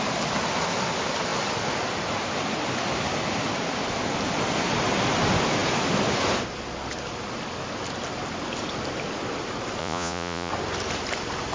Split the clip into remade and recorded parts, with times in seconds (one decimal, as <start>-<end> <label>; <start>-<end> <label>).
0.0-9.8 recorded; 9.8-10.5 remade; 10.5-11.5 recorded